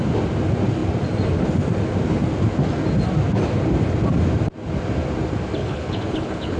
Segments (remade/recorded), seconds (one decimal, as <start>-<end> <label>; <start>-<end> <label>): 0.0-5.6 recorded; 5.6-6.6 remade